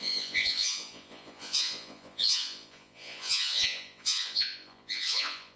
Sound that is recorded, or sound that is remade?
remade